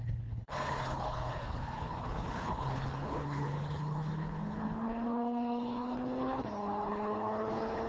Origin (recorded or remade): remade